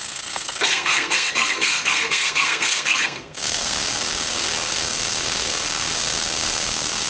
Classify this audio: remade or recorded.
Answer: remade